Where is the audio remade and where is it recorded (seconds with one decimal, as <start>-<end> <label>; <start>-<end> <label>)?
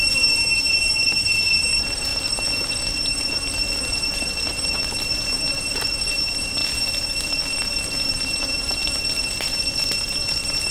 0.0-2.1 remade; 2.1-5.1 recorded; 5.1-6.6 remade; 6.6-7.8 recorded; 7.8-8.8 remade; 8.8-9.8 recorded; 9.8-10.7 remade